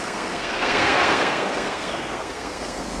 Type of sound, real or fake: fake